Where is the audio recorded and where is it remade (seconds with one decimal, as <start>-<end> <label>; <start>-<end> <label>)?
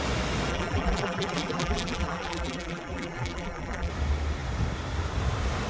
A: 0.0-0.5 recorded; 0.5-3.9 remade; 3.9-5.7 recorded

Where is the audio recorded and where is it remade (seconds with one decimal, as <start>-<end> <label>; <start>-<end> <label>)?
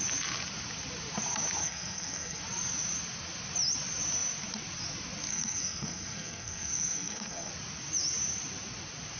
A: 0.0-1.6 recorded; 1.6-2.4 remade; 2.4-5.3 recorded; 5.3-7.5 remade; 7.5-9.2 recorded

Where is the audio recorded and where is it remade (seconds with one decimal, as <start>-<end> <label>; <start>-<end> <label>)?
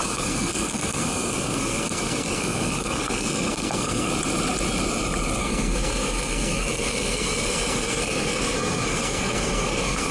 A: 0.0-4.1 remade; 4.1-5.4 recorded; 5.4-10.1 remade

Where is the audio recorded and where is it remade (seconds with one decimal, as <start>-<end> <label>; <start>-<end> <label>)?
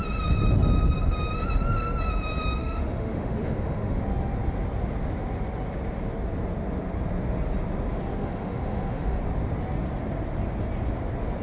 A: 0.0-2.6 recorded; 2.6-4.0 remade; 4.0-8.2 recorded; 8.2-9.2 remade; 9.2-11.4 recorded